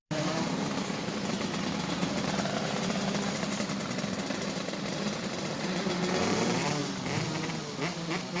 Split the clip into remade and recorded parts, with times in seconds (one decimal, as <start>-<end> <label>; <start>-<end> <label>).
0.0-8.4 remade